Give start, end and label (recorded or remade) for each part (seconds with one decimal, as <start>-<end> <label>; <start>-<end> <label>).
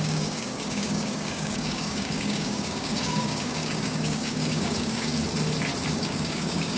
0.0-5.1 remade; 5.1-5.9 recorded; 5.9-6.8 remade